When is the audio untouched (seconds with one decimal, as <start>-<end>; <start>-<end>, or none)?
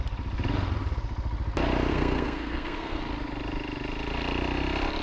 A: 0.0-1.9; 3.0-5.0